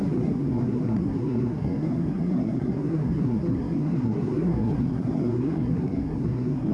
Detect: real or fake fake